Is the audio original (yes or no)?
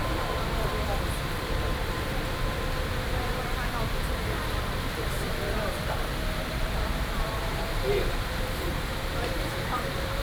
no